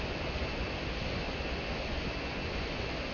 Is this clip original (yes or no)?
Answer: no